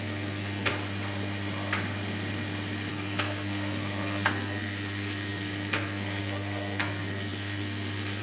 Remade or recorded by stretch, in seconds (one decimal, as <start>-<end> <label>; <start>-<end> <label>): 0.0-0.7 remade; 0.7-2.9 recorded; 2.9-8.2 remade